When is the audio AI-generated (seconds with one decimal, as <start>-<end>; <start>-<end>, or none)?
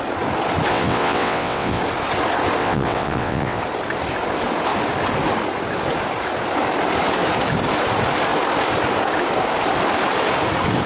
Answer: 0.7-1.8; 2.6-3.6